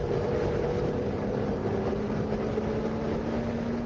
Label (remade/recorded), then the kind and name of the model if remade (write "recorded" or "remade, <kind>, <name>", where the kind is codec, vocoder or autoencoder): recorded